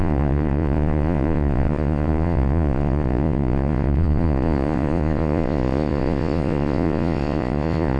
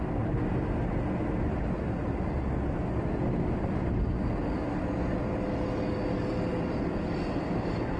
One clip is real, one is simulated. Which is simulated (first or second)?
first